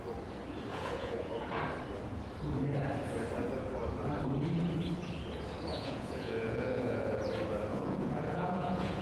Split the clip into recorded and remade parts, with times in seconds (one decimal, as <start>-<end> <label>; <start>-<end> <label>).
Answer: 0.0-0.7 recorded; 0.7-1.3 remade; 1.3-5.7 recorded; 5.7-7.2 remade; 7.2-7.7 recorded; 7.7-9.0 remade